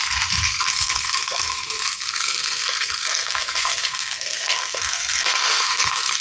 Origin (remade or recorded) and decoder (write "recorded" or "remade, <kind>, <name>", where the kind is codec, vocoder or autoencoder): remade, codec, SNAC